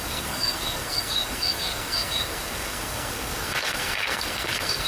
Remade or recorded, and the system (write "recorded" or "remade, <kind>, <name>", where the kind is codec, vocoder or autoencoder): remade, codec, SNAC